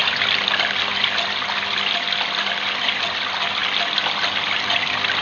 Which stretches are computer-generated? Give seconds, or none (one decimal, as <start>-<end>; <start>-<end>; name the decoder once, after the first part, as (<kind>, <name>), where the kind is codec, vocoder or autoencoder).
none